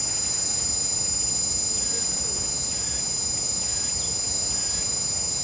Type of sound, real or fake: real